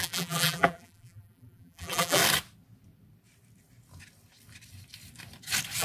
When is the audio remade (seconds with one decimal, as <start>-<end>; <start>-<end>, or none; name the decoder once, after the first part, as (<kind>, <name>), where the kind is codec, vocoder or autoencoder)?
0.0-2.2 (vocoder, BigVGAN v2)